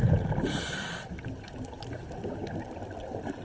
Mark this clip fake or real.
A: real